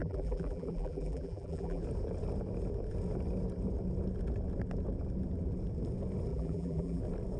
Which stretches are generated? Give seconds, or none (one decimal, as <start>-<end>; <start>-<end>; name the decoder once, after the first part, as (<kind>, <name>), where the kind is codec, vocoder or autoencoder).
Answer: 0.0-1.8 (vocoder, BigVGAN v2); 6.3-7.0